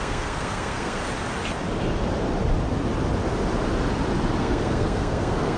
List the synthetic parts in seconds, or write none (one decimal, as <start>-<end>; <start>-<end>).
0.0-1.0; 4.4-5.6